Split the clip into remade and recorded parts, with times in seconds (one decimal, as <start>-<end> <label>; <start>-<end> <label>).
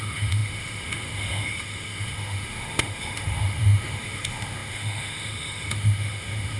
0.0-6.6 remade